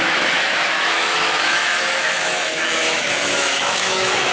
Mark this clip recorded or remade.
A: remade